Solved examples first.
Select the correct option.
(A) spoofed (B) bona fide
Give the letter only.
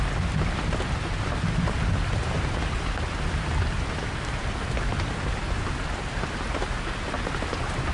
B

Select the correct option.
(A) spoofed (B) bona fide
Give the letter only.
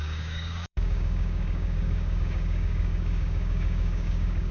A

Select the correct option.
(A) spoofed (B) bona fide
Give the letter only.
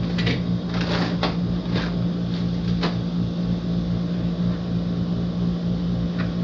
B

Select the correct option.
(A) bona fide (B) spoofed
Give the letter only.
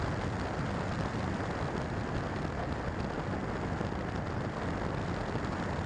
A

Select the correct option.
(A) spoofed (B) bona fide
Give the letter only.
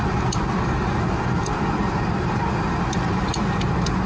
B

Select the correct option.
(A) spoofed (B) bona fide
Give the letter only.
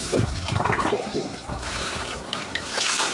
A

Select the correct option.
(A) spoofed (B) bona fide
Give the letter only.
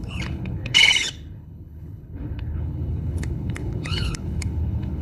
A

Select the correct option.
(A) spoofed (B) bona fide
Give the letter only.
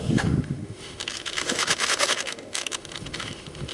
A